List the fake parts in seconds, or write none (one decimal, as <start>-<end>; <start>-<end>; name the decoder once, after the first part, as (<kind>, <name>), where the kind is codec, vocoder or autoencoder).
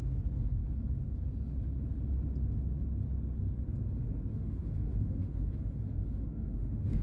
0.0-0.6 (autoencoder, DAC-VAE); 4.3-7.0